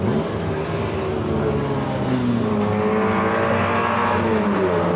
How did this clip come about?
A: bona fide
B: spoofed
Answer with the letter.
A